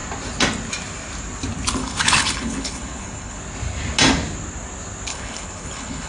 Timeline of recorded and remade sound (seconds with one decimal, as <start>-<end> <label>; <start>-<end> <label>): 0.0-1.8 recorded; 1.8-3.4 remade; 3.4-5.1 recorded; 5.1-6.1 remade